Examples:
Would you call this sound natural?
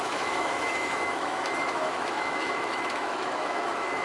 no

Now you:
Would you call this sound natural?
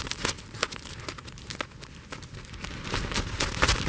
yes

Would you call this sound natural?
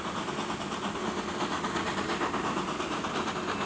yes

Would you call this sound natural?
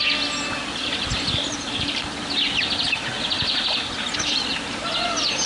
yes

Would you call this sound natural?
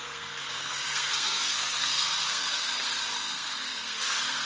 no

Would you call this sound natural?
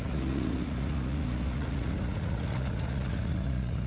no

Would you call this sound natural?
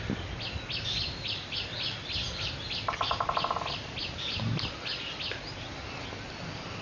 yes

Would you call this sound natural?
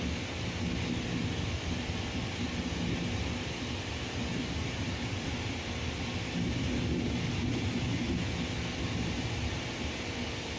yes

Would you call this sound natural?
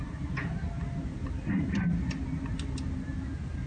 yes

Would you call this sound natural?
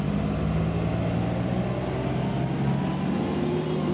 yes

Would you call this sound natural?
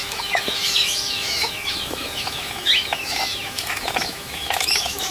no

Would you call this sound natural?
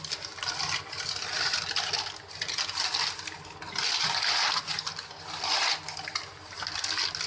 yes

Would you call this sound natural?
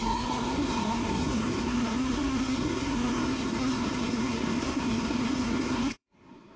no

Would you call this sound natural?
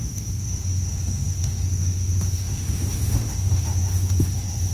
no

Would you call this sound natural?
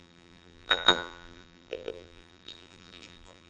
no